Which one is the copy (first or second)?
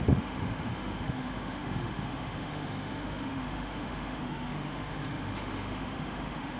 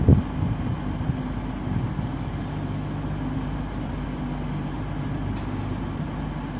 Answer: first